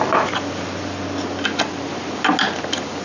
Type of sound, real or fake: real